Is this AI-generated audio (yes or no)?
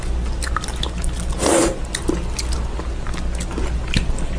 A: no